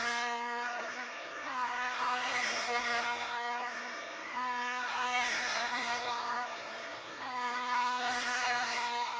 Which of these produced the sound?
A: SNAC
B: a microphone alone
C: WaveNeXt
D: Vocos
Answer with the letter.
A